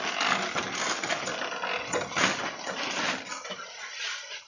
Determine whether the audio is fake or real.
real